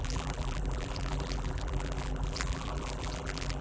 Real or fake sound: fake